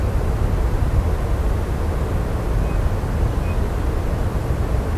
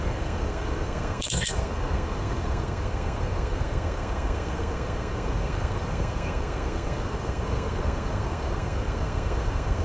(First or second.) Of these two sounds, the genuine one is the first